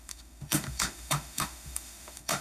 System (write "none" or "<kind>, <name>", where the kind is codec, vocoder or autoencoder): autoencoder, DAC-VAE